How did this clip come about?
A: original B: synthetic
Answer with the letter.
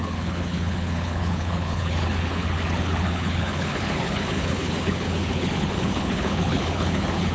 B